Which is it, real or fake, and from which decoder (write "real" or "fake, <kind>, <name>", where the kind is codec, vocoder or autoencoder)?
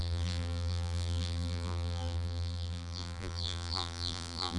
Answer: fake, vocoder, BigVGAN v2